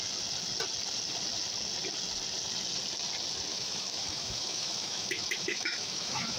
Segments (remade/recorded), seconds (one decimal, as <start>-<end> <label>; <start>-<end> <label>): 0.0-3.5 recorded; 3.5-6.4 remade